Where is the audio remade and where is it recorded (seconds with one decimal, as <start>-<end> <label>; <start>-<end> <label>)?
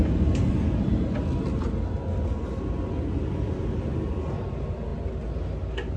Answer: 0.0-6.0 recorded